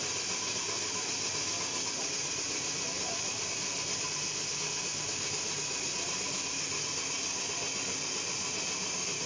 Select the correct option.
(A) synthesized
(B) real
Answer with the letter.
B